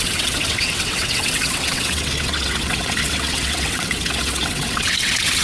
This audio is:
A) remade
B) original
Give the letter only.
A